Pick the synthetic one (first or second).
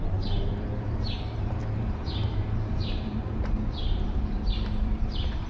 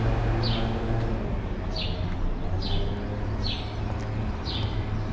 first